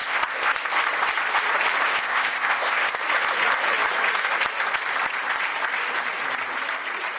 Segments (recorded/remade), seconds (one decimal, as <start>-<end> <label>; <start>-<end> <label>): 0.0-0.5 remade; 0.5-1.9 recorded; 1.9-3.0 remade; 3.0-7.2 recorded